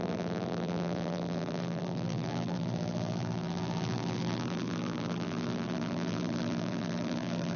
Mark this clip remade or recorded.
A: remade